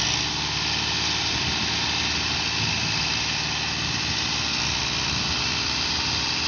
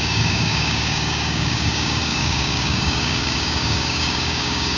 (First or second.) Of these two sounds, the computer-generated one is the second